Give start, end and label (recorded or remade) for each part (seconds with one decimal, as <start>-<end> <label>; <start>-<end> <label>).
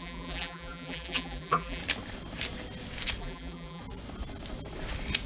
0.0-1.8 remade; 1.8-3.2 recorded; 3.2-3.8 remade; 3.8-5.3 recorded